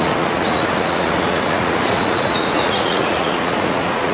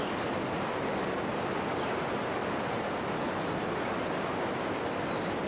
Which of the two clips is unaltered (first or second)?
second